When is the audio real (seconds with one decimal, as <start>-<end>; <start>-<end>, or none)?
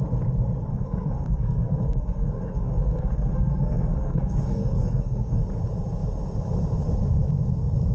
0.0-0.7; 5.4-7.9